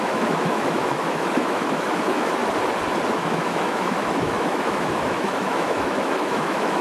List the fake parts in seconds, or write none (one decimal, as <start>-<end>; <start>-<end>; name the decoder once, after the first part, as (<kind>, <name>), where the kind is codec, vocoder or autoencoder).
0.0-2.4 (autoencoder, DAC-VAE); 3.1-6.8